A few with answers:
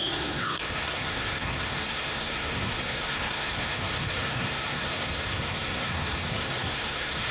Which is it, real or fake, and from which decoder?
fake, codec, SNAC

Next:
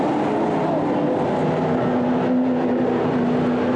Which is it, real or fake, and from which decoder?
real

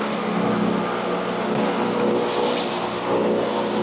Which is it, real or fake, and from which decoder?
real